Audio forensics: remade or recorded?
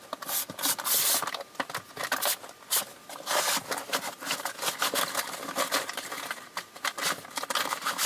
recorded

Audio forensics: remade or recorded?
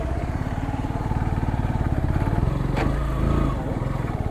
remade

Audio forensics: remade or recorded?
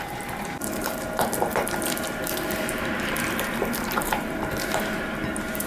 remade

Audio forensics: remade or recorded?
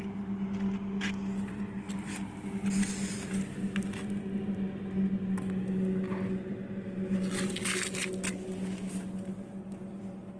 recorded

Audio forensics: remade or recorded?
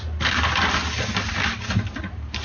recorded